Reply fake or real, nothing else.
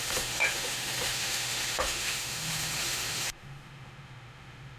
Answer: fake